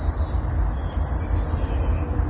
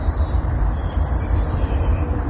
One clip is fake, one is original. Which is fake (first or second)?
second